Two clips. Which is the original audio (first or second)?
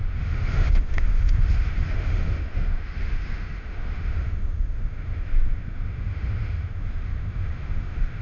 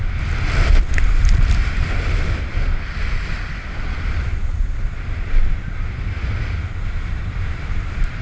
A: second